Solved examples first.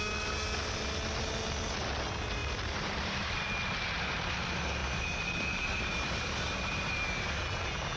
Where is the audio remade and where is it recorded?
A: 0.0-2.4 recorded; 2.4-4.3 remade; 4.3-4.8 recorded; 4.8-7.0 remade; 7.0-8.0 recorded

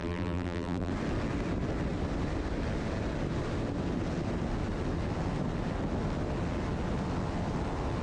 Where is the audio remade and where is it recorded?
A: 0.0-0.9 remade; 0.9-8.0 recorded

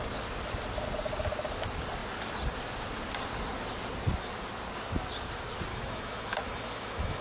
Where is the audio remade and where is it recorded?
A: 0.0-5.7 recorded; 5.7-7.2 remade